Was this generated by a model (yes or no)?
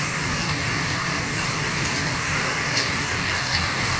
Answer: yes